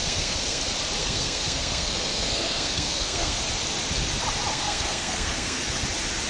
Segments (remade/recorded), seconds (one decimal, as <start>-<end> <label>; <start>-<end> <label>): 0.0-0.6 remade; 0.6-1.0 recorded; 1.0-3.4 remade; 3.4-4.5 recorded; 4.5-5.6 remade; 5.6-6.3 recorded